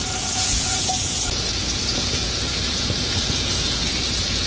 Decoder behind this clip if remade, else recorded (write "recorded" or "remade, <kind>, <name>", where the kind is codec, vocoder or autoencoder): remade, vocoder, Vocos